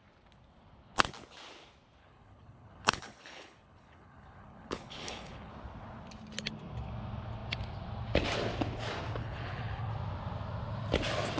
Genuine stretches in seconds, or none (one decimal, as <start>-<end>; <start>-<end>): 0.0-2.0; 5.5-9.2; 9.9-11.4